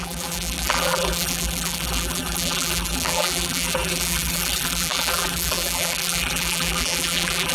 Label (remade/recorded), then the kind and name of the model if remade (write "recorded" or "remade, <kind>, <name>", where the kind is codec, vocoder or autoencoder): remade, vocoder, BigVGAN v2